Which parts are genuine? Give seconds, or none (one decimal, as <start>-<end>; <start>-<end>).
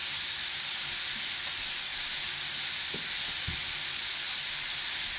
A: 0.0-5.2